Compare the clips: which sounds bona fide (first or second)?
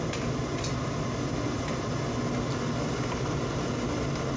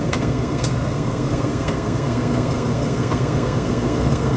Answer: first